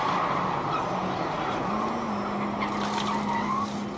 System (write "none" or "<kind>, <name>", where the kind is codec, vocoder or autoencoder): none